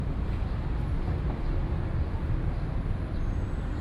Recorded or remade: recorded